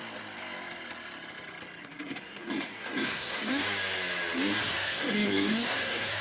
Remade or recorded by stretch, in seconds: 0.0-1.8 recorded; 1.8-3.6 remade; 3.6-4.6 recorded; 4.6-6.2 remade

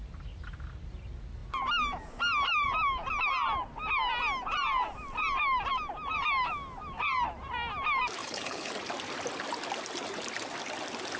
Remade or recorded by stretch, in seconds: 0.0-8.2 recorded; 8.2-8.7 remade; 8.7-11.2 recorded